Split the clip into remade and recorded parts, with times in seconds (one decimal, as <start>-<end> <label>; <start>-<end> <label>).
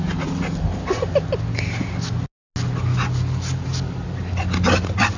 0.0-5.2 recorded